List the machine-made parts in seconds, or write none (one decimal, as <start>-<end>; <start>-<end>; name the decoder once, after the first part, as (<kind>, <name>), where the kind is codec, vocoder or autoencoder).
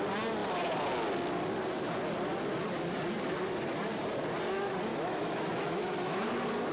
4.9-6.3 (autoencoder, DAC-VAE)